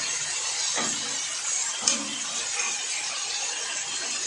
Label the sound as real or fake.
real